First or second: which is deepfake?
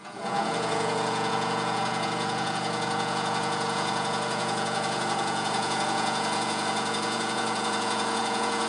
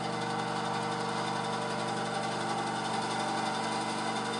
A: first